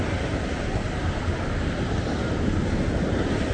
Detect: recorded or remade recorded